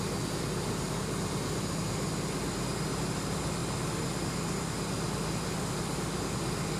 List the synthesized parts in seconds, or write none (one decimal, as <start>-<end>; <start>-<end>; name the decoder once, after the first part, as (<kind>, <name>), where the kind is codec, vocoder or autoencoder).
none

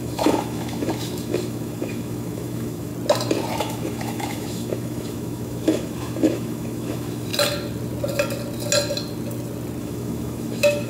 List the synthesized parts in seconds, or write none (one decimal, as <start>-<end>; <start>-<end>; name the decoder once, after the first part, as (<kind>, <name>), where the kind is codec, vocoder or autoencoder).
0.0-2.9 (autoencoder, DAC-VAE); 3.6-7.3; 9.8-10.9

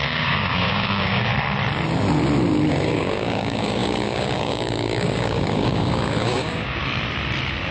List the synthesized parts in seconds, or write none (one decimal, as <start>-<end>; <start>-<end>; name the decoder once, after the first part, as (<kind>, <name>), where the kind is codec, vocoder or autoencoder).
0.0-1.3 (codec, DAC); 2.7-6.8